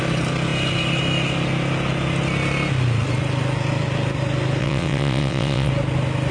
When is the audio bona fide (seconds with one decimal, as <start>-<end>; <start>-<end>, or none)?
0.0-4.6; 5.7-6.3